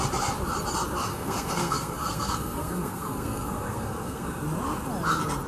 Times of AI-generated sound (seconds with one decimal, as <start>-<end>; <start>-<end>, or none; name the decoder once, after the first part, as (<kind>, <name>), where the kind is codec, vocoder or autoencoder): 1.1-4.4 (codec, SNAC)